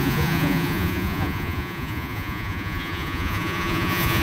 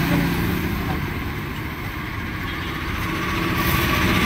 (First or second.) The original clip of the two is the second